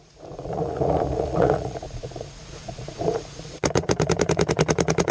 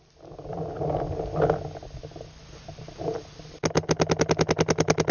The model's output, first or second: first